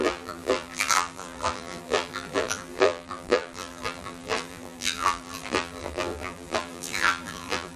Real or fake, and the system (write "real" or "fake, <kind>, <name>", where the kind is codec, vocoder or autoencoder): fake, vocoder, BigVGAN v2